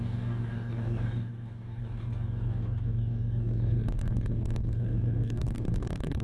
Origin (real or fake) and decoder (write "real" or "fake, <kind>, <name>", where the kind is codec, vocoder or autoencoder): fake, codec, DAC